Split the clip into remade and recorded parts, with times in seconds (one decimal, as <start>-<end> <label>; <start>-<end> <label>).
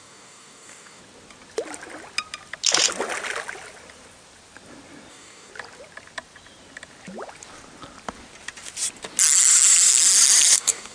0.0-1.0 remade; 1.0-5.1 recorded; 5.1-5.5 remade; 5.5-10.5 recorded; 10.5-10.9 remade